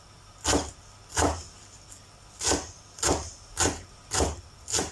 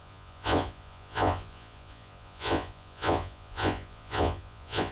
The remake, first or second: second